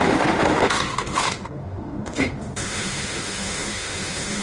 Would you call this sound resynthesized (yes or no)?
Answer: yes